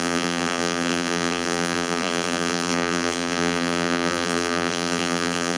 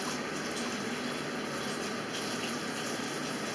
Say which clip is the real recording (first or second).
second